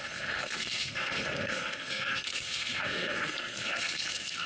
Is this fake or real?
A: fake